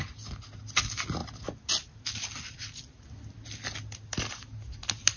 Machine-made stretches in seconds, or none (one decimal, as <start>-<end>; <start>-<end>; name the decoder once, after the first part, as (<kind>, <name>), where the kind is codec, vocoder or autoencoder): none